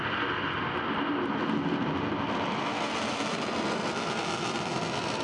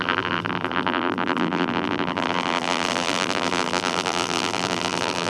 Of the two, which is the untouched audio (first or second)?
first